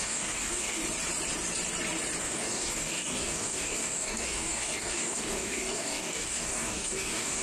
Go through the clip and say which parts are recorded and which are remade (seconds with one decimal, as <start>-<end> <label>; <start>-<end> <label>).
0.0-0.8 remade; 0.8-2.2 recorded; 2.2-7.4 remade